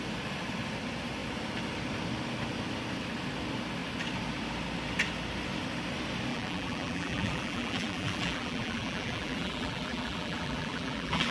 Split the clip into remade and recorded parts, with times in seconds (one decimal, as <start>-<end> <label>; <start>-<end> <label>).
0.0-6.3 recorded; 6.3-11.3 remade